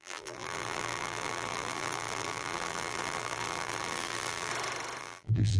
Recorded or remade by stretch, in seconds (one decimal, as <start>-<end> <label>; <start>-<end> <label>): 0.0-4.5 remade; 4.5-5.0 recorded; 5.0-5.6 remade